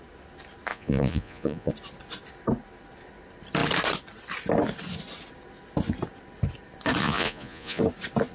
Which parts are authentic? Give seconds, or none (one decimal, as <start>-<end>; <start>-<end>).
0.0-0.7; 1.7-7.0; 7.8-8.3